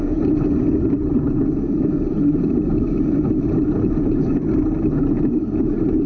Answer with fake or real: fake